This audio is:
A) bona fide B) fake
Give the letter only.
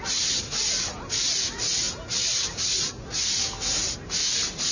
A